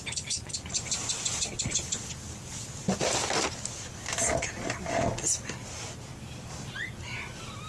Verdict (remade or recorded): recorded